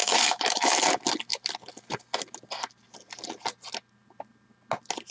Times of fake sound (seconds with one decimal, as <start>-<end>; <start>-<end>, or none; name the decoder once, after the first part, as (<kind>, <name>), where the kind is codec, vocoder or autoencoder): 0.0-0.8 (autoencoder, DAC-VAE)